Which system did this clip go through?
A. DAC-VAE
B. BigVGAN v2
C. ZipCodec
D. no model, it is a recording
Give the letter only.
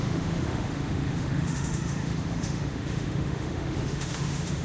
A